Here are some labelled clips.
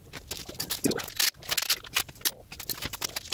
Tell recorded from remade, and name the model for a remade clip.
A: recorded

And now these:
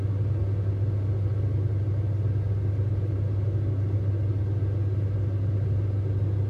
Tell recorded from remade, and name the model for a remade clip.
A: recorded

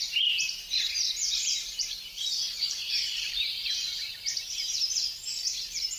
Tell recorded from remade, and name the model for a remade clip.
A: remade, vocoder, BigVGAN v2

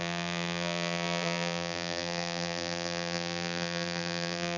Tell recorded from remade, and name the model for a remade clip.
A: remade, vocoder, BigVGAN v2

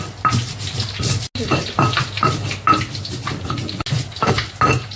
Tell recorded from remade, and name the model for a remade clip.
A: recorded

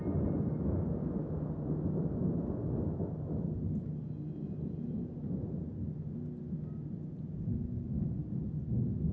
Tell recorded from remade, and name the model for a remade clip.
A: recorded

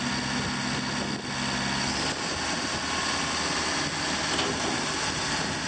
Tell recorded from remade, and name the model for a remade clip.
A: recorded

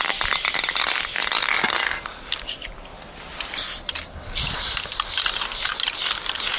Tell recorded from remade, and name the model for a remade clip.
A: recorded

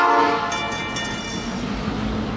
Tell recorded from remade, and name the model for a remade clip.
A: recorded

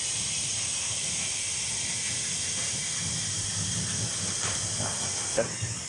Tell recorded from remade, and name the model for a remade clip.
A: remade, vocoder, BigVGAN v2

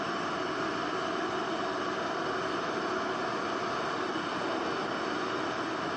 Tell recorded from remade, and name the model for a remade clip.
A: recorded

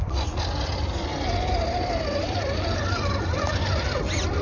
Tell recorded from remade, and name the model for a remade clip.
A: remade, vocoder, BigVGAN v2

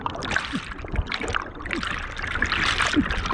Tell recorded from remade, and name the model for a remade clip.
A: recorded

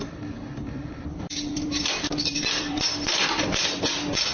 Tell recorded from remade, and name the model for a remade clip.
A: remade, vocoder, BigVGAN v2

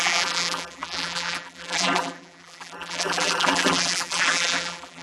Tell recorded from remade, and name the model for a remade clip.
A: remade, vocoder, BigVGAN v2